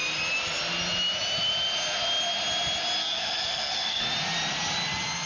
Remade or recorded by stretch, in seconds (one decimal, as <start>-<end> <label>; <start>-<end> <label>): 0.0-3.0 recorded; 3.0-4.0 remade; 4.0-5.3 recorded